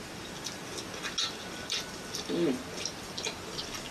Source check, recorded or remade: recorded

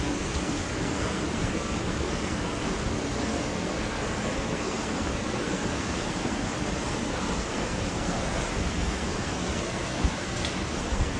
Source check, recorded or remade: remade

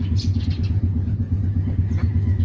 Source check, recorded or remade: recorded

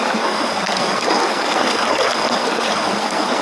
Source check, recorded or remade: remade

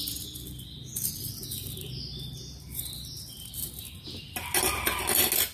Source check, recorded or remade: recorded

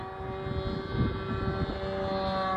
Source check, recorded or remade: recorded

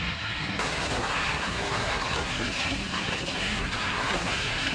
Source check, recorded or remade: remade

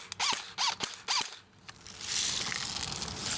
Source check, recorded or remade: recorded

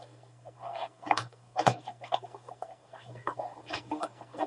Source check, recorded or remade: remade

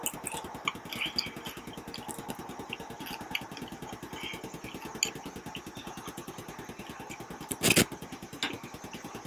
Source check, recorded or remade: recorded